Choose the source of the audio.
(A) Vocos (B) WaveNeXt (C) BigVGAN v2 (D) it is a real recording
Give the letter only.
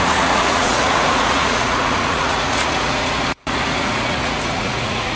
A